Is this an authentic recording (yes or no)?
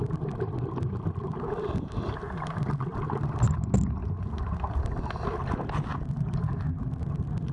yes